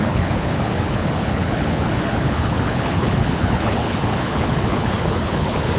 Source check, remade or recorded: remade